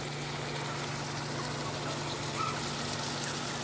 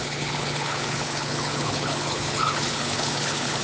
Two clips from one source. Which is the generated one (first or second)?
second